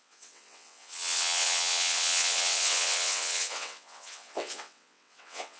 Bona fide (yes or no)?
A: no